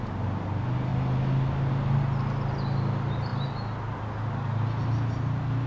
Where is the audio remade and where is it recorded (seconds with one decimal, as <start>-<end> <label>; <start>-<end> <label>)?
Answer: 0.0-5.7 recorded